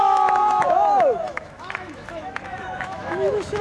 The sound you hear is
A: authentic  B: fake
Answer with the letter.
B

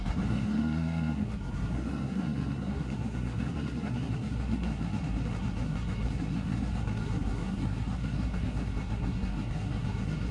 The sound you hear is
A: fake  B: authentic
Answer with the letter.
A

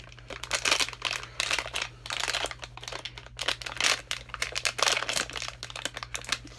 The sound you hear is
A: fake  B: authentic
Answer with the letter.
B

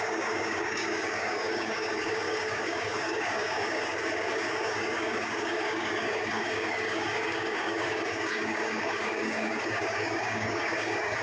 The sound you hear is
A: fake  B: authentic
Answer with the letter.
A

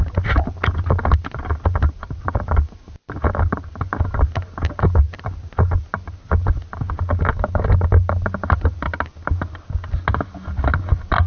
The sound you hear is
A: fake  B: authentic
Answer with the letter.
B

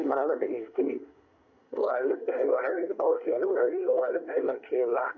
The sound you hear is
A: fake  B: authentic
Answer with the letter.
A